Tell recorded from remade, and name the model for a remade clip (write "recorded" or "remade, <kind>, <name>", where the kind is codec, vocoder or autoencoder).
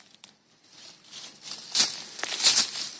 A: recorded